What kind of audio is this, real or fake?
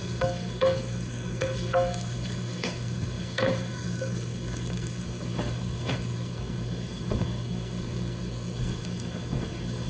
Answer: fake